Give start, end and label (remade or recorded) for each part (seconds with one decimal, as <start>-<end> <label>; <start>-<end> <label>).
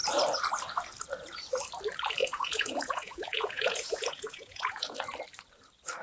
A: 0.0-2.2 recorded; 2.2-5.0 remade; 5.0-6.0 recorded